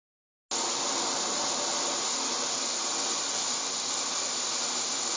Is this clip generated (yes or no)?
no